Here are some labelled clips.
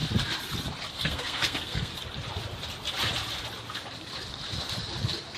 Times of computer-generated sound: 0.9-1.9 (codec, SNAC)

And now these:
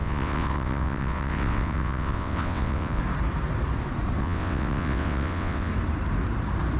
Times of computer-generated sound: 0.0-3.0 (vocoder, WaveNeXt); 4.2-5.7

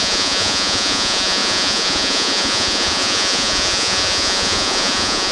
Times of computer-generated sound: 0.0-5.3 (vocoder, Vocos)

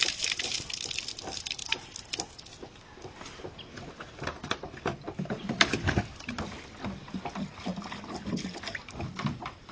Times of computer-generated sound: none